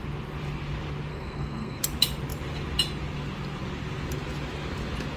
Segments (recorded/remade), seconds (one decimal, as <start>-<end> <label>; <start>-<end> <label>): 0.0-1.1 recorded; 1.1-1.8 remade; 1.8-5.2 recorded